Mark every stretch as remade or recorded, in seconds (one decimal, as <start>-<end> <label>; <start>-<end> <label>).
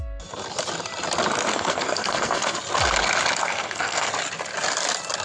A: 0.0-1.5 recorded; 1.5-2.6 remade; 2.6-3.4 recorded; 3.4-4.1 remade; 4.1-5.2 recorded